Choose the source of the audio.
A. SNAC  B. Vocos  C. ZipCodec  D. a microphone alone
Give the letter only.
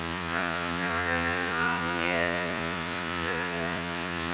B